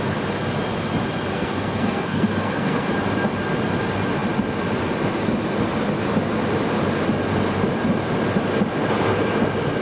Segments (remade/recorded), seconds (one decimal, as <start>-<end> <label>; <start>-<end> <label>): 0.0-1.3 recorded; 1.3-2.9 remade; 2.9-9.8 recorded